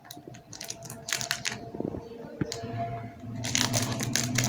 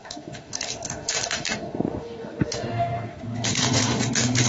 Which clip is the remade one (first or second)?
second